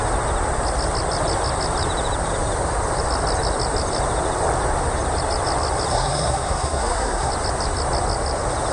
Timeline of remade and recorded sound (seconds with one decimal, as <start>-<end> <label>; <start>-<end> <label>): 0.0-5.9 recorded; 5.9-7.3 remade; 7.3-8.7 recorded